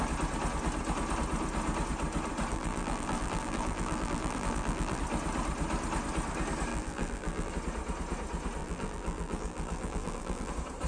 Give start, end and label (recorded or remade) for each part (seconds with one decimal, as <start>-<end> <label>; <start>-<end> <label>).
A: 0.0-2.5 recorded; 2.5-5.0 remade; 5.0-6.7 recorded; 6.7-7.5 remade; 7.5-8.6 recorded; 8.6-10.5 remade; 10.5-10.9 recorded